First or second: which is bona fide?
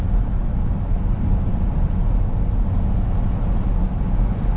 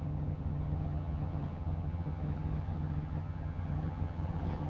first